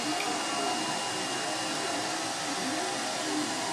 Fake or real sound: real